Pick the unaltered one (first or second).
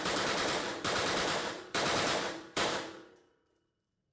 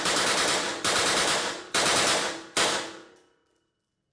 second